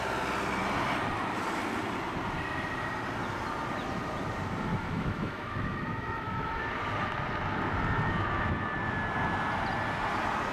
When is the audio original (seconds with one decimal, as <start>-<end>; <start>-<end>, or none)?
0.0-4.7; 6.6-10.5